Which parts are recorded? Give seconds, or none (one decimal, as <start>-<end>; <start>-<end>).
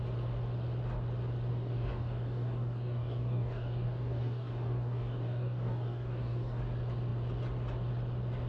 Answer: 0.0-1.5; 6.6-8.5